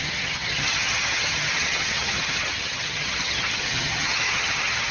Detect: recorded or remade remade